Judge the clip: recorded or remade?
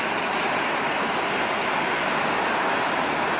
recorded